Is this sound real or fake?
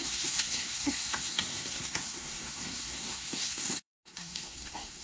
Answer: fake